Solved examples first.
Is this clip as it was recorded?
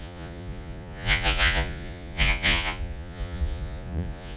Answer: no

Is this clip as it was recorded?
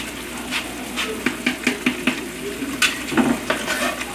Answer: yes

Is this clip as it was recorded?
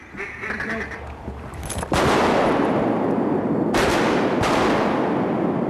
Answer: yes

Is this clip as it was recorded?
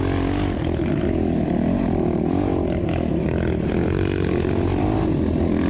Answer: yes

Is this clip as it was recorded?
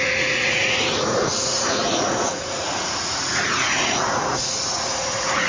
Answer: no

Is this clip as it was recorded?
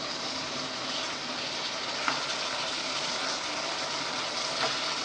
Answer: yes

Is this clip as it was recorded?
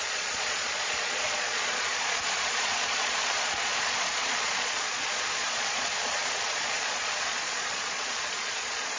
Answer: no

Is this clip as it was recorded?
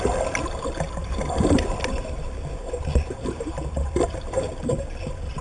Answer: yes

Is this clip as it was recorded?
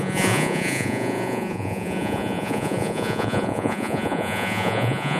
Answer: no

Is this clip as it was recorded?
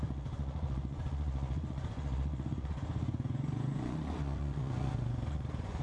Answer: no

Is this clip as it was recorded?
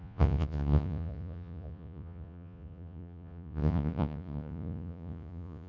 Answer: no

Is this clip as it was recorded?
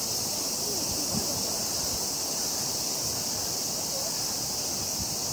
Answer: yes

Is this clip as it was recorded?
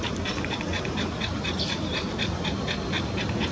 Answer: yes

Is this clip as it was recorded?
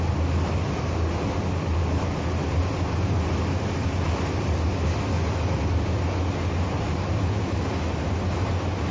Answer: yes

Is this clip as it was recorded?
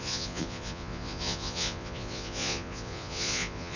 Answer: no